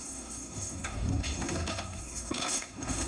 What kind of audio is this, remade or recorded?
remade